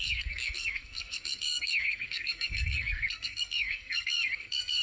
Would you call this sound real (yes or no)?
no